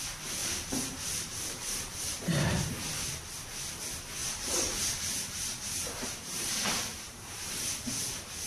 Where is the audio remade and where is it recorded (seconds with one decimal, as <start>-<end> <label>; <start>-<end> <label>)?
0.0-0.4 recorded; 0.4-2.4 remade; 2.4-4.2 recorded; 4.2-7.5 remade; 7.5-8.5 recorded